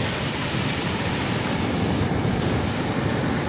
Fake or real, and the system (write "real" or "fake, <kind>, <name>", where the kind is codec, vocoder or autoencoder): real